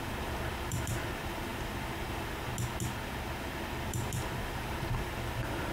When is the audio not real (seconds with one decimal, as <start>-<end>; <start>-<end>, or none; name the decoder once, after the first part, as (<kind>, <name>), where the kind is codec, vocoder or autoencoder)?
0.0-2.5 (vocoder, BigVGAN v2); 3.9-5.7